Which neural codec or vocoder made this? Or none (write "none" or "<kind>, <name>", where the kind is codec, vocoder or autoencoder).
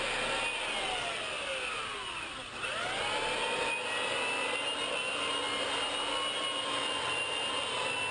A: none